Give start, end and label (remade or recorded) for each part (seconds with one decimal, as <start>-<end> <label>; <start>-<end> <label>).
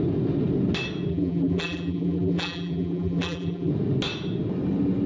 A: 0.0-1.1 recorded; 1.1-3.7 remade; 3.7-5.1 recorded